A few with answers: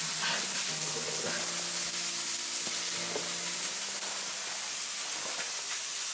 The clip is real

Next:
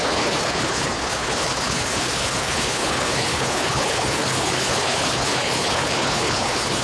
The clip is fake